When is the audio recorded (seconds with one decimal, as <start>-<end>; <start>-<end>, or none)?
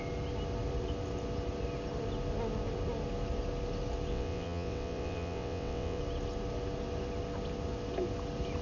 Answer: 0.0-4.1; 6.0-8.6